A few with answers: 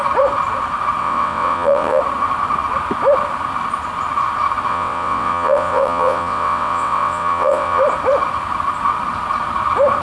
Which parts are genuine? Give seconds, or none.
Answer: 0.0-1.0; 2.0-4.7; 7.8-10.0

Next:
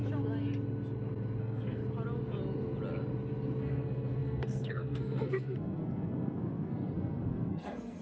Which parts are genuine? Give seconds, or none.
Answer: 0.0-1.4; 1.8-3.6

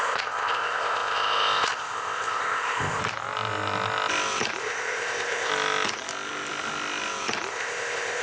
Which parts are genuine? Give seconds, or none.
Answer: 3.0-4.6; 5.5-7.5

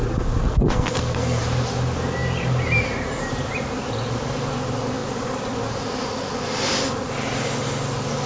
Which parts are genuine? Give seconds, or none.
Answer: 0.0-0.4; 1.4-8.3